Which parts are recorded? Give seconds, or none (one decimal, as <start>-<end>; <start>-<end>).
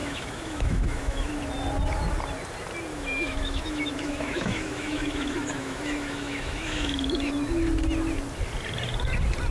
1.4-2.9; 7.3-9.5